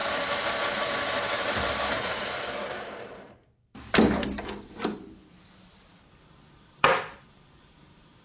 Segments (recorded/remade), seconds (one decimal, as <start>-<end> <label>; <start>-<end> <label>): 0.0-3.0 recorded; 3.0-8.2 remade